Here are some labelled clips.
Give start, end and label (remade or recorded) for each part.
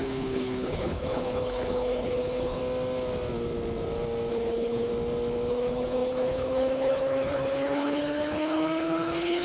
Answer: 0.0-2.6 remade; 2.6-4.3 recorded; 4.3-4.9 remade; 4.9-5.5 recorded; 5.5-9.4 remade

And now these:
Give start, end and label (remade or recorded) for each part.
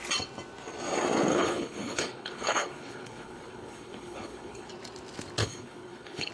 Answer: 0.0-1.3 recorded; 1.3-4.7 remade; 4.7-5.4 recorded; 5.4-6.3 remade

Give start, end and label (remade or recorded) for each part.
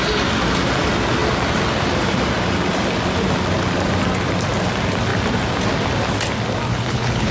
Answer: 0.0-6.7 recorded; 6.7-7.3 remade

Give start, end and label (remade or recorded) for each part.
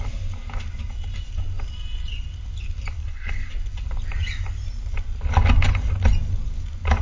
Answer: 0.0-3.0 recorded; 3.0-3.5 remade; 3.5-7.0 recorded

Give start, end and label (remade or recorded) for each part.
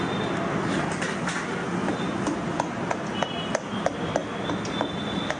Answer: 0.0-5.4 recorded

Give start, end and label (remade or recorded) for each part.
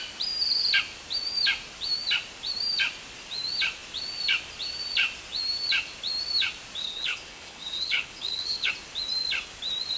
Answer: 0.0-6.8 recorded; 6.8-8.7 remade; 8.7-10.0 recorded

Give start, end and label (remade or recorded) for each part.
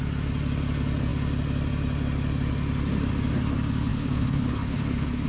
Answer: 0.0-3.9 recorded; 3.9-5.3 remade